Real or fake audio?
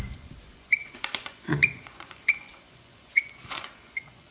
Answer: fake